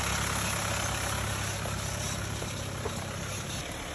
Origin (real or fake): real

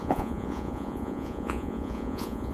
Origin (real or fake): fake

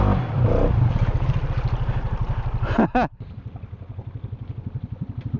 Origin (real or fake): real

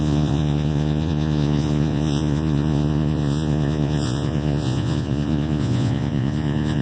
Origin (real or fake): fake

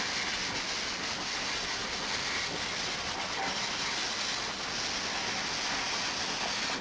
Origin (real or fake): real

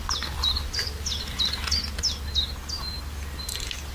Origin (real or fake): real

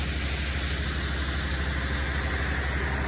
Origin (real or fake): real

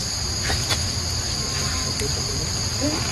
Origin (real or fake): real